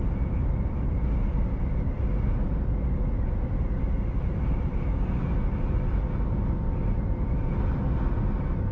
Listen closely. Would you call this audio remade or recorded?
recorded